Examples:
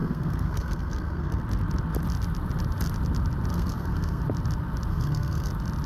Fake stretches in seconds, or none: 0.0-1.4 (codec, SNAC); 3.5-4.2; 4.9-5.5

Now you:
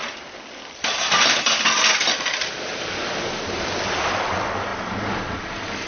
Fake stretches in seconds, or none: none

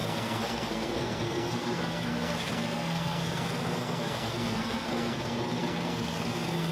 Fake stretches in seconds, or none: 0.0-6.7 (codec, SNAC)

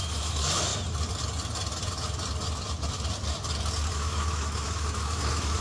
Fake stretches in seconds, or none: 0.0-0.7 (autoencoder, DAC-VAE); 3.9-5.6

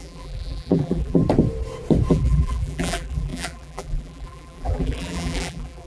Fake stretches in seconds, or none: 0.0-1.2 (vocoder, BigVGAN v2); 2.1-5.9

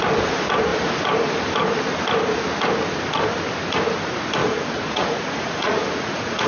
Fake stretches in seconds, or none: 4.4-6.5 (vocoder, Vocos)

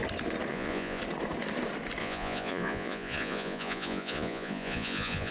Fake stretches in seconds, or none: 0.5-1.0 (vocoder, Vocos); 2.0-5.3

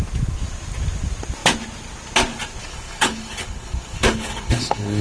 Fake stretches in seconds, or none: 2.6-5.0 (codec, HILCodec)